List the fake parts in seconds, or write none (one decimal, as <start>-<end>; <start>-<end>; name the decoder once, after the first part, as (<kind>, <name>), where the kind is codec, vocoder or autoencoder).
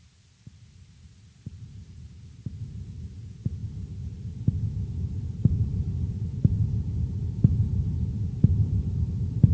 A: 0.0-3.6 (vocoder, BigVGAN v2); 4.9-9.5